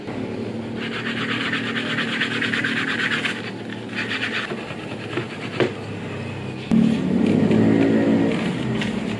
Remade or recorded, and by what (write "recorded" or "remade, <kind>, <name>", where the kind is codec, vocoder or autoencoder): recorded